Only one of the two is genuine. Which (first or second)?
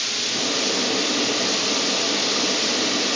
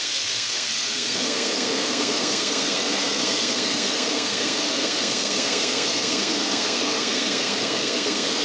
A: first